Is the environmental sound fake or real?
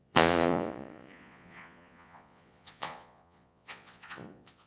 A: fake